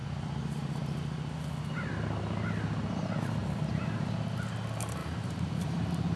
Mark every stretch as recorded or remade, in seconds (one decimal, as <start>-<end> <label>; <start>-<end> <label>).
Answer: 0.0-1.0 remade; 1.0-3.4 recorded; 3.4-4.1 remade; 4.1-5.0 recorded; 5.0-6.2 remade